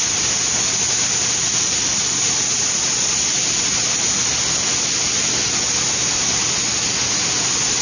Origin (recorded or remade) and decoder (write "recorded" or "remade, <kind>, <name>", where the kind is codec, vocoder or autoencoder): recorded